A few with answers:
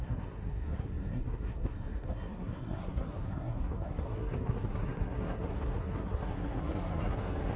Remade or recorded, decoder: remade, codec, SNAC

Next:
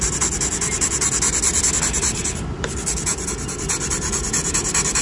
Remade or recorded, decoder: recorded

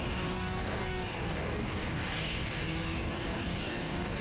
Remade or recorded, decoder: remade, codec, DAC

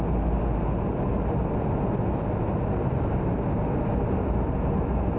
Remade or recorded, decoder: recorded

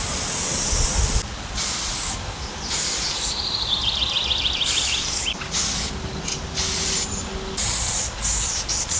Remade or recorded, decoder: recorded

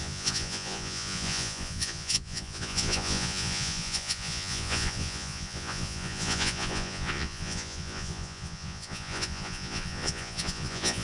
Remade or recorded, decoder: remade, vocoder, Vocos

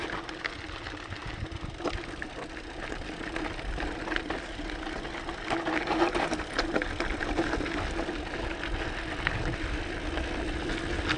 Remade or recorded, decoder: recorded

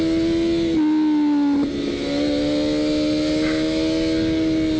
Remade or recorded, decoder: recorded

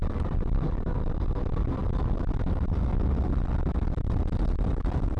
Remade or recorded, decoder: recorded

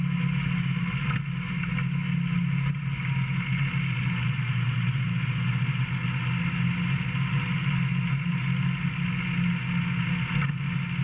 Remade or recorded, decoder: recorded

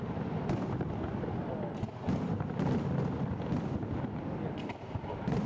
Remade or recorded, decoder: recorded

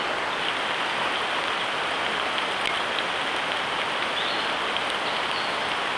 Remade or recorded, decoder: recorded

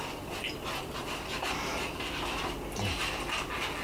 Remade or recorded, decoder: recorded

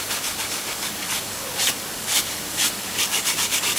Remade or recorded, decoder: remade, codec, DAC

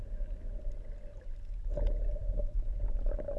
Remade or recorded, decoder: recorded